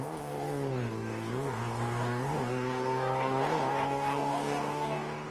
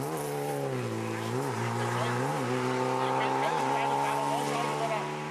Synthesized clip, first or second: first